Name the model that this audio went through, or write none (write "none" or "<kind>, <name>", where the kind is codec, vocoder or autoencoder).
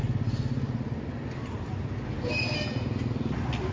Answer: none